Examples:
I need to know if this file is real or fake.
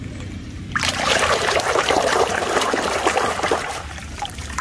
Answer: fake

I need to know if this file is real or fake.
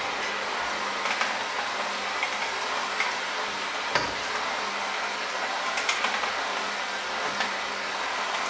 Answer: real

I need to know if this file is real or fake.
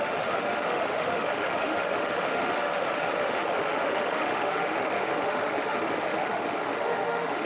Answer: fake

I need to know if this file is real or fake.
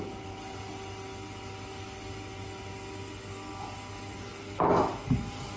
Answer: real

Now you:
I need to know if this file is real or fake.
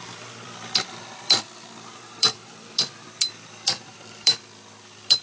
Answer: fake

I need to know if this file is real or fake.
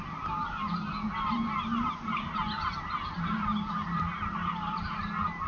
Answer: real